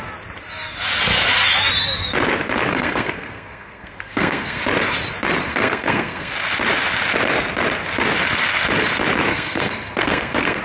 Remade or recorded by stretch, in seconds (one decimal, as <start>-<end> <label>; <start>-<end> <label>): 0.0-2.7 recorded; 2.7-4.6 remade; 4.6-5.5 recorded; 5.5-6.3 remade; 6.3-9.3 recorded; 9.3-10.6 remade